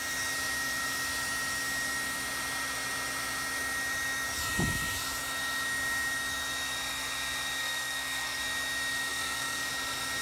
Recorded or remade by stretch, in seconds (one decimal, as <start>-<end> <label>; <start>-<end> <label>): 0.0-7.6 recorded; 7.6-8.4 remade; 8.4-9.1 recorded; 9.1-9.7 remade; 9.7-10.2 recorded